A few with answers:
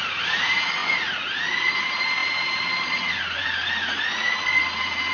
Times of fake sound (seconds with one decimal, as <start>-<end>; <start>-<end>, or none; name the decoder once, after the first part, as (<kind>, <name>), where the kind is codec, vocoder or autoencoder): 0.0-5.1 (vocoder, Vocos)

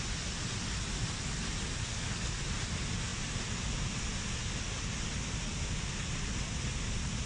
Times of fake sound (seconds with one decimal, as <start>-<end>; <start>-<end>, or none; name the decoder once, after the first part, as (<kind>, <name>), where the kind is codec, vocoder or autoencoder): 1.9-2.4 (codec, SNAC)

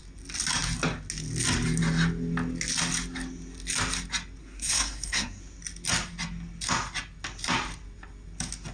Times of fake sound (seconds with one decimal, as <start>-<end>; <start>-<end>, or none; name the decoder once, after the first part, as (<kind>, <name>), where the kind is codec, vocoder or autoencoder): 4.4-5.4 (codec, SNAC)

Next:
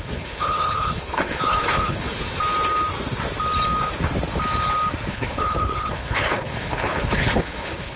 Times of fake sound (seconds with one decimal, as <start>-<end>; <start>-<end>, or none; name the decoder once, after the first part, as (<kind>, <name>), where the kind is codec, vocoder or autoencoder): 0.0-2.3 (codec, HILCodec); 5.1-8.0

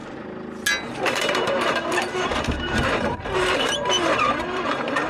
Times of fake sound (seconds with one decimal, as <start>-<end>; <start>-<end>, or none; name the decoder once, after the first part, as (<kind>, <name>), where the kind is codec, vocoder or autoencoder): 0.9-5.1 (vocoder, BigVGAN v2)